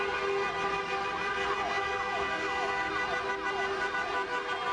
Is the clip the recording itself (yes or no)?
yes